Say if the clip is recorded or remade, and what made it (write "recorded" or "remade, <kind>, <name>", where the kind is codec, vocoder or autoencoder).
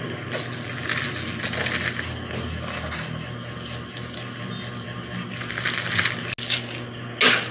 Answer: recorded